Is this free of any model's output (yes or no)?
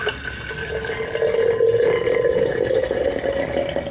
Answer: yes